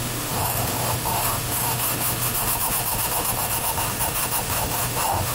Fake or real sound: fake